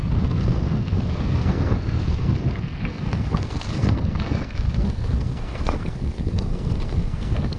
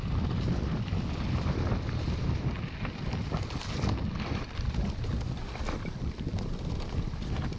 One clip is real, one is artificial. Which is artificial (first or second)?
first